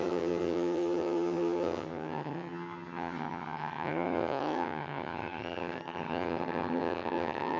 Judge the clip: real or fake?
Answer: fake